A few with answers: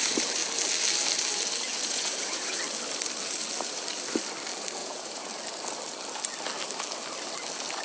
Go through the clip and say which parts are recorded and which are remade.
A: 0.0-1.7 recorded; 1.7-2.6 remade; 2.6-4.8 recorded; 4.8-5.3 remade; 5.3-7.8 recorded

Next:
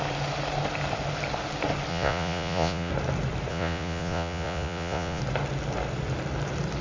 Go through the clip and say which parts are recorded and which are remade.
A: 0.0-1.9 recorded; 1.9-2.9 remade; 2.9-3.5 recorded; 3.5-5.2 remade; 5.2-6.8 recorded

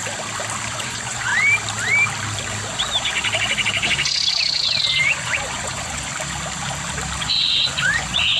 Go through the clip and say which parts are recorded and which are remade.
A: 0.0-0.7 recorded; 0.7-1.3 remade; 1.3-5.0 recorded; 5.0-6.1 remade; 6.1-7.2 recorded; 7.2-8.4 remade

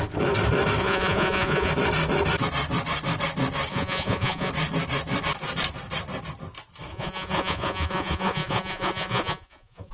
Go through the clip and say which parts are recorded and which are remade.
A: 0.0-0.8 recorded; 0.8-1.7 remade; 1.7-3.7 recorded; 3.7-4.5 remade; 4.5-6.9 recorded; 6.9-9.9 remade

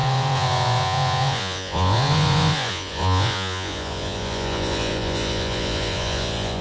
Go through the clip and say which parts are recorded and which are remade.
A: 0.0-6.6 remade

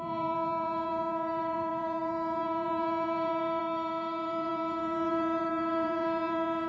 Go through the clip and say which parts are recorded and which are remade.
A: 0.0-6.7 remade

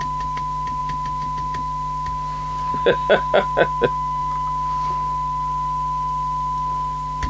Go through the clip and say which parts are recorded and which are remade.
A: 0.0-7.3 recorded

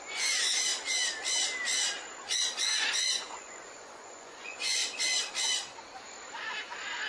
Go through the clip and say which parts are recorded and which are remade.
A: 0.0-0.7 remade; 0.7-2.3 recorded; 2.3-4.8 remade; 4.8-7.1 recorded